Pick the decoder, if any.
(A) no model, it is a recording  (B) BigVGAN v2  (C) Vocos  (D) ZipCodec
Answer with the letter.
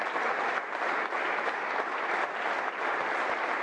A